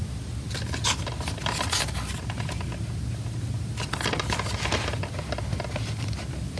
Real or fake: real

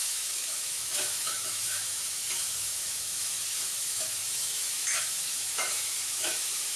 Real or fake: fake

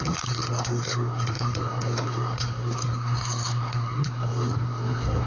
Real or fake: fake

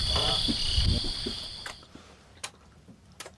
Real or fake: fake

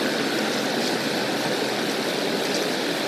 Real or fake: real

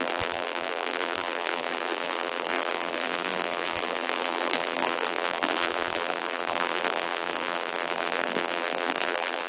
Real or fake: fake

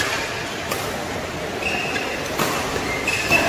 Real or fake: real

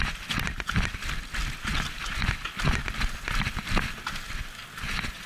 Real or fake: real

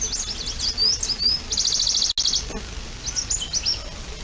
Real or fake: real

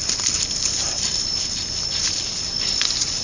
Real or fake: real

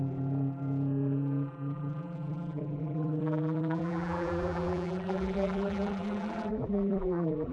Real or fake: fake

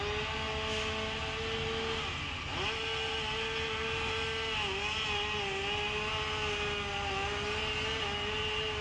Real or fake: real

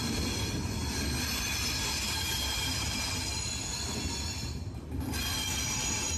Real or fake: real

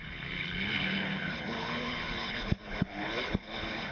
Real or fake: fake